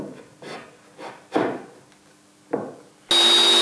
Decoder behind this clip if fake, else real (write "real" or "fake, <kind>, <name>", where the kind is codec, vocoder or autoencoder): real